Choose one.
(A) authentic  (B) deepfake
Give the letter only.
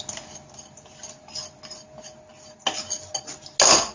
A